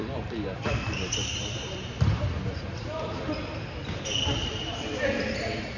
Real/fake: fake